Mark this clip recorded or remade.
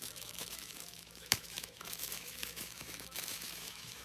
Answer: remade